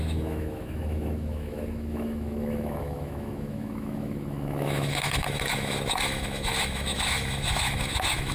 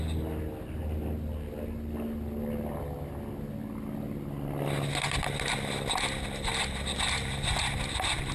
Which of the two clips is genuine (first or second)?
second